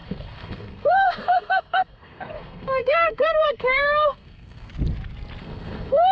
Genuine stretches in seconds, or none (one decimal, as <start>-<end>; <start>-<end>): 4.7-5.4